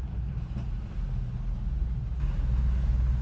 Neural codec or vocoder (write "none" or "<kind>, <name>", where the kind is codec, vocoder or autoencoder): none